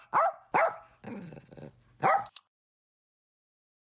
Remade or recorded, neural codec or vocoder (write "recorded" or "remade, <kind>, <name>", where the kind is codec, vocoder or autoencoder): recorded